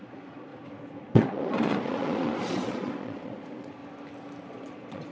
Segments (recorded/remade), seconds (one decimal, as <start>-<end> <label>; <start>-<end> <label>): 0.0-0.5 remade; 0.5-1.0 recorded; 1.0-3.8 remade; 3.8-4.4 recorded; 4.4-5.1 remade